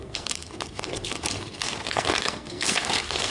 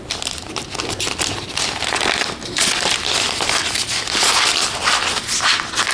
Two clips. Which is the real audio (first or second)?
second